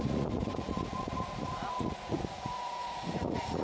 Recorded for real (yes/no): no